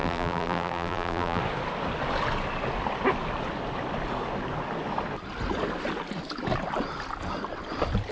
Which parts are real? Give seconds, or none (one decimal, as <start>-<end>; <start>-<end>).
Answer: 1.4-8.1